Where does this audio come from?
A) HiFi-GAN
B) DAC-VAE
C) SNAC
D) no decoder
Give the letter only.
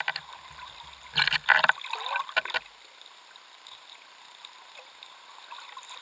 D